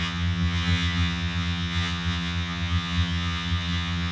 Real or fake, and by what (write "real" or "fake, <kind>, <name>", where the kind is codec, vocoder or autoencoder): fake, vocoder, HiFi-GAN